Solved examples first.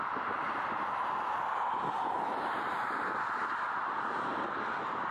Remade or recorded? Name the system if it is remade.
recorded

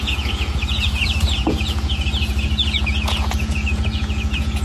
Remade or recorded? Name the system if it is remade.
remade, vocoder, Vocos